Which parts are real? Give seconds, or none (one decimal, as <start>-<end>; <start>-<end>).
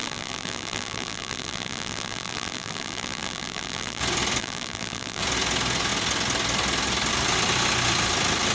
4.0-4.4; 5.2-8.5